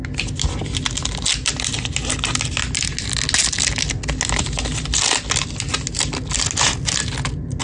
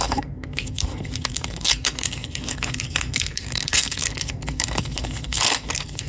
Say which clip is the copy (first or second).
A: second